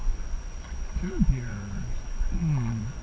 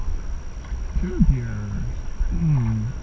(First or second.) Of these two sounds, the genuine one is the second